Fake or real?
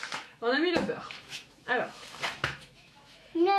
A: fake